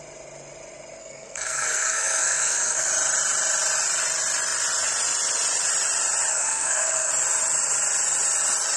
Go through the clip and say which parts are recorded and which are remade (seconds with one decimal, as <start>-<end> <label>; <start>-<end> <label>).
0.0-1.0 recorded; 1.0-2.9 remade; 2.9-6.3 recorded; 6.3-7.1 remade; 7.1-8.8 recorded